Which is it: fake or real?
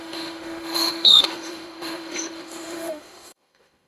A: fake